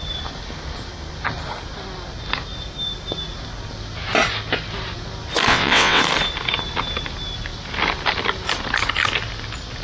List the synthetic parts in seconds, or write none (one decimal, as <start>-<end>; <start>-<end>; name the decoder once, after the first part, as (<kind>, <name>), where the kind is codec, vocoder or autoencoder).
5.5-6.0 (vocoder, WaveNeXt)